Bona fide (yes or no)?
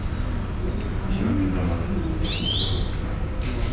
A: yes